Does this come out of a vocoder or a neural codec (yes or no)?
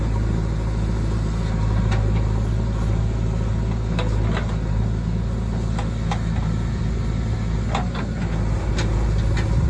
no